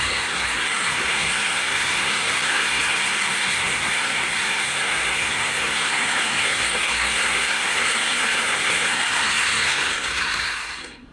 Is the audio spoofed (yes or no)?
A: yes